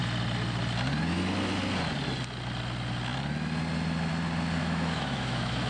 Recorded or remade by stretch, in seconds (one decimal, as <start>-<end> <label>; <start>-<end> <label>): 0.0-4.6 recorded; 4.6-5.7 remade